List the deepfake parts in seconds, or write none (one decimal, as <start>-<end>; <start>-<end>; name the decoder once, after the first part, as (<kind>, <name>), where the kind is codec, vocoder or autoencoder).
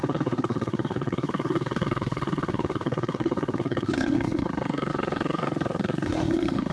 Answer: 0.0-6.7 (codec, SNAC)